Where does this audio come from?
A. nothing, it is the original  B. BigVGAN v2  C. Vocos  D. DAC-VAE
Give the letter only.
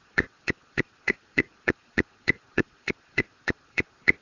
C